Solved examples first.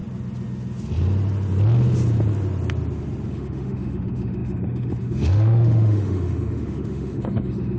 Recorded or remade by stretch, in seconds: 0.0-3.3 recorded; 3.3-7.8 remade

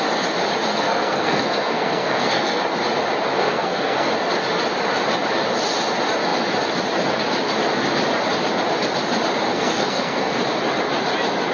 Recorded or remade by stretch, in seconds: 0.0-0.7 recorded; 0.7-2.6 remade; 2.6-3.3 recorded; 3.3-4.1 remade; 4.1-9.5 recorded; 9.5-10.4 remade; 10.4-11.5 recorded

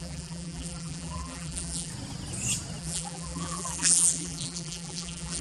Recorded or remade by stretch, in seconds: 0.0-1.9 remade; 1.9-2.8 recorded; 2.8-5.4 remade